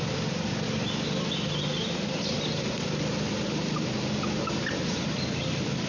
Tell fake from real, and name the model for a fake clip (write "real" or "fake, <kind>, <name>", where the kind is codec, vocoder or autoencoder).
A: real